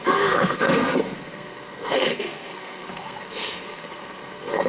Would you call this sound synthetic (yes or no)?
yes